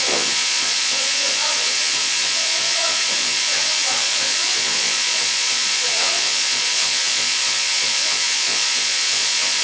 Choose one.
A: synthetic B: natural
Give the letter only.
A